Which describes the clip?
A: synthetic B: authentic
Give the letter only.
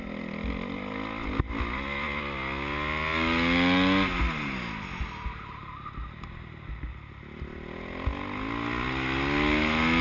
B